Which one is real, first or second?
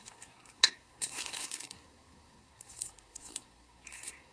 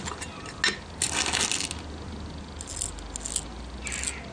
second